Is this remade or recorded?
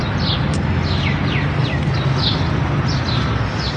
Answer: recorded